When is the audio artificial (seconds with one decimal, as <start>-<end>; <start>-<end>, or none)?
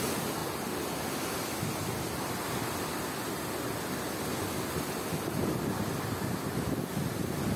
none